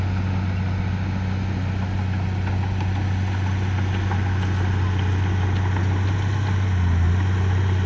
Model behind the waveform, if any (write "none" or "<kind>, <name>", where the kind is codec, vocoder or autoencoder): none